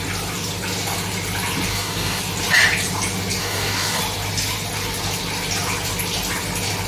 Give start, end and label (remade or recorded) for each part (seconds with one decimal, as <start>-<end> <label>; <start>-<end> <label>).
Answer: 0.0-1.7 recorded; 1.7-2.2 remade; 2.2-3.4 recorded; 3.4-4.0 remade; 4.0-6.9 recorded